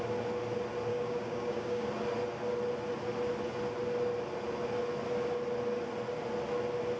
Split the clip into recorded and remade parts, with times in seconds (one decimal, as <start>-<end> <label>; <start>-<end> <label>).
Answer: 0.0-0.9 recorded; 0.9-1.9 remade; 1.9-7.0 recorded

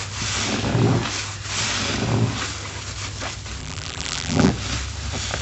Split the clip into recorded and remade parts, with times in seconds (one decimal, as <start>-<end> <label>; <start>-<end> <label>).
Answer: 0.0-3.6 recorded; 3.6-4.5 remade; 4.5-5.4 recorded

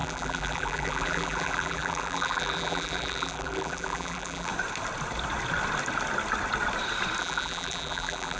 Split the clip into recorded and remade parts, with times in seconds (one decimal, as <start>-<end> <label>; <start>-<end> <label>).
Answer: 0.0-4.5 remade; 4.5-7.2 recorded; 7.2-8.4 remade

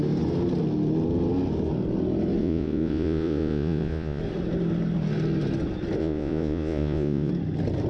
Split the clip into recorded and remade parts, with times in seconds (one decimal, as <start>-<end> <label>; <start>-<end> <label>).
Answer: 0.0-2.4 recorded; 2.4-4.2 remade; 4.2-6.0 recorded; 6.0-7.3 remade; 7.3-7.9 recorded

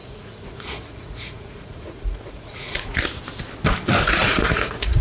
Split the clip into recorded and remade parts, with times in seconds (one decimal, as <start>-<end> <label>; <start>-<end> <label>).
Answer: 0.0-3.0 remade; 3.0-4.2 recorded; 4.2-5.0 remade